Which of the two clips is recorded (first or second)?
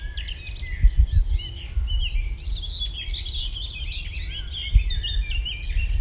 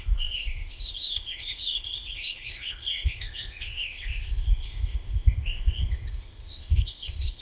first